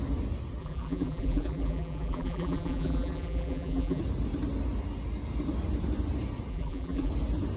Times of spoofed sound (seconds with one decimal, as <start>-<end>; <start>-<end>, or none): 0.6-4.0; 6.5-7.1